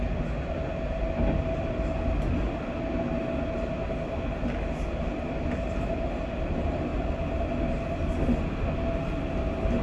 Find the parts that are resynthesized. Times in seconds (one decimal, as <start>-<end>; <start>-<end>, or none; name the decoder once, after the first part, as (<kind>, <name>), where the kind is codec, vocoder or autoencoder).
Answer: none

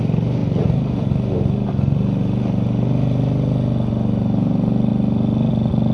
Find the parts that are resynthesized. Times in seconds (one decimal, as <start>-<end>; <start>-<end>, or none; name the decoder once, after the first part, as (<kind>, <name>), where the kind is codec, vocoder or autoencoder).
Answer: none

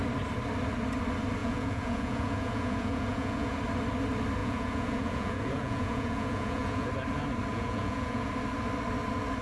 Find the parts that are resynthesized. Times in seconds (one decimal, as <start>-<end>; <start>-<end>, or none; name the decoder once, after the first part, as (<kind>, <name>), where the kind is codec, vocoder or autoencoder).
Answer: 1.4-3.6 (vocoder, Vocos); 4.4-6.9; 7.5-8.3

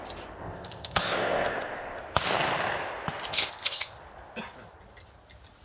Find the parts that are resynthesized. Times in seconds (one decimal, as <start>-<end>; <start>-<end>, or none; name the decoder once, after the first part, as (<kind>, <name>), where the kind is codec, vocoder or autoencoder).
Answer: 0.4-2.0 (codec, ZipCodec); 3.3-4.0

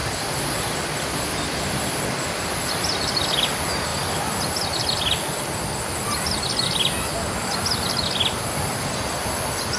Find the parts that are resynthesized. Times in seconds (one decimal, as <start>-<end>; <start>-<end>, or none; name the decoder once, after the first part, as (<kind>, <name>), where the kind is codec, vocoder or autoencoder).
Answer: 0.0-2.0 (vocoder, BigVGAN v2); 3.9-4.9

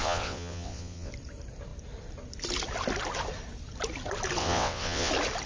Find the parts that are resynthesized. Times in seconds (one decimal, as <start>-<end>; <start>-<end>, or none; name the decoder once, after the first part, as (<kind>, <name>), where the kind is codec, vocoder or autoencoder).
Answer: 0.0-1.1 (vocoder, WaveNeXt); 4.4-5.1

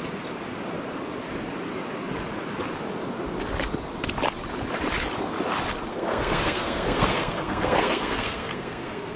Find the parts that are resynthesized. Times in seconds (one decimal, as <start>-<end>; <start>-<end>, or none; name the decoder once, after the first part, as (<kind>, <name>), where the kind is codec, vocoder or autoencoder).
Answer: 5.9-9.2 (codec, SNAC)